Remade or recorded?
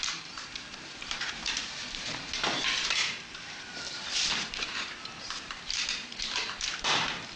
remade